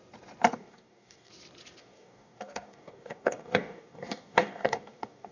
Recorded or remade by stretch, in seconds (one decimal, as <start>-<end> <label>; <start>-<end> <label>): 0.0-0.5 recorded; 0.5-1.3 remade; 1.3-1.8 recorded; 1.8-5.3 remade